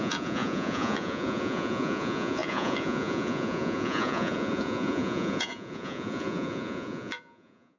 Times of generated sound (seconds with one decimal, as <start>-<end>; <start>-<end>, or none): 0.0-7.8